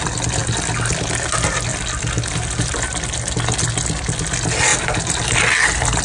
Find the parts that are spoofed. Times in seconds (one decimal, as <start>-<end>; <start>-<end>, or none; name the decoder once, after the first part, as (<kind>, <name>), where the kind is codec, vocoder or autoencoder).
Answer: none